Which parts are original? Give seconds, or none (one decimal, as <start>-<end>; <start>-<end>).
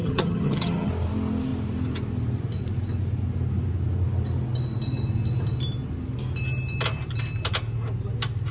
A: 0.9-8.5